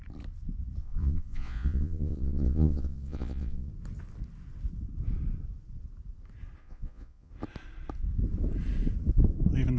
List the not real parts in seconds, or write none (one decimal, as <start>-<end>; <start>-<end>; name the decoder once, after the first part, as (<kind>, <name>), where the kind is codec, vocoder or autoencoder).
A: 0.8-3.7 (vocoder, Vocos); 6.6-7.3